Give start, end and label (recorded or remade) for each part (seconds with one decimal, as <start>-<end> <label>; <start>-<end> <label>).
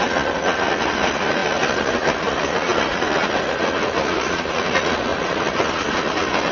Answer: 0.0-6.5 remade